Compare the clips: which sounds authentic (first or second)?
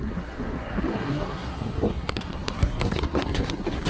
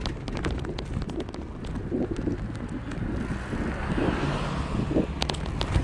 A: second